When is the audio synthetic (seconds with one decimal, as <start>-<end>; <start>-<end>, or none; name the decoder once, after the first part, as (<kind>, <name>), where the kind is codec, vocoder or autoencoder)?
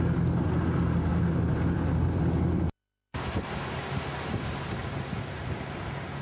1.1-3.2 (vocoder, BigVGAN v2); 4.8-5.7